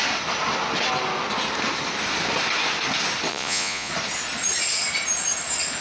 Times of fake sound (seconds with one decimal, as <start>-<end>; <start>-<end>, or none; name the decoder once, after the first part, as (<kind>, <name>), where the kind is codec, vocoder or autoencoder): 3.3-3.9 (vocoder, Vocos)